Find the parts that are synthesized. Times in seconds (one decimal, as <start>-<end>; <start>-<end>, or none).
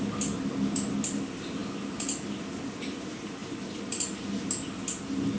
none